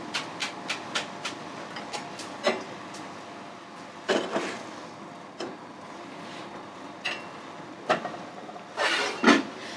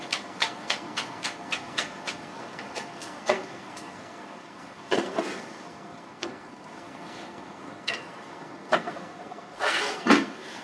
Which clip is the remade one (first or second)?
second